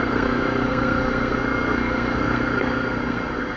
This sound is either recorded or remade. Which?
remade